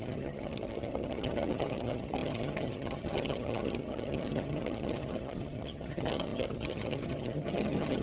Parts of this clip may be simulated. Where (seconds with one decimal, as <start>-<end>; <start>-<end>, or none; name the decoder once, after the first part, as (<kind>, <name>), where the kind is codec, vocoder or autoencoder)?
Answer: 0.0-8.0 (vocoder, HiFi-GAN)